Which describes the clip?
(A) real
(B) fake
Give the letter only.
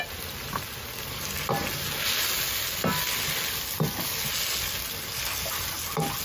A